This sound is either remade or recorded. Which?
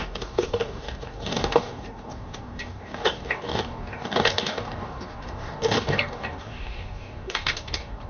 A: remade